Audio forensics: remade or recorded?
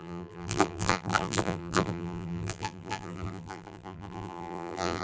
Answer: remade